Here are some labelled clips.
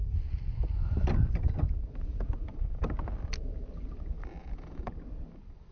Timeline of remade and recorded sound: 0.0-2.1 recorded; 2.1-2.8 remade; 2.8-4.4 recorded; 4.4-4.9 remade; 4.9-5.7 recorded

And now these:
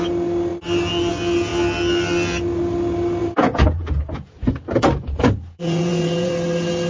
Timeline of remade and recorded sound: 0.0-3.2 recorded; 3.2-6.3 remade; 6.3-6.9 recorded

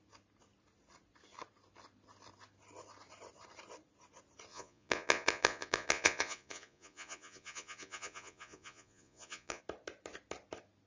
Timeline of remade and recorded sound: 0.0-4.5 recorded; 4.5-9.6 remade; 9.6-10.9 recorded

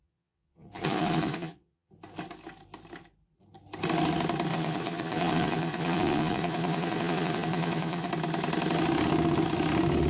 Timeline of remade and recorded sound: 0.0-1.9 remade; 1.9-4.5 recorded; 4.5-8.1 remade; 8.1-10.1 recorded

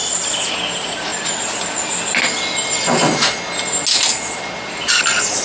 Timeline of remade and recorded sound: 0.0-5.4 recorded